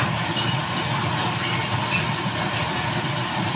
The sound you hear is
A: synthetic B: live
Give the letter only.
B